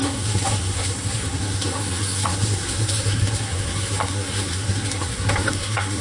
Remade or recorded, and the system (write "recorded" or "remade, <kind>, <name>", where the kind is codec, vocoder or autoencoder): remade, codec, SNAC